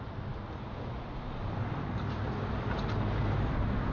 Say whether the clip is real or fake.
real